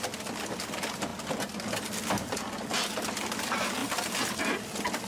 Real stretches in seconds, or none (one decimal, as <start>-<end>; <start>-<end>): 0.0-5.1